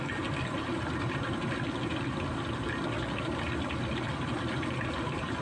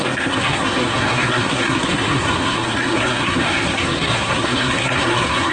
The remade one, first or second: second